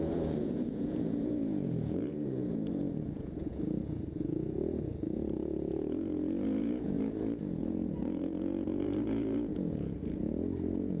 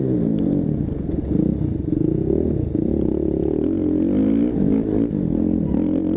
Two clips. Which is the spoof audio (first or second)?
first